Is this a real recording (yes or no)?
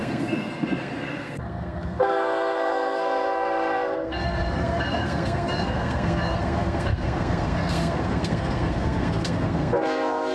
no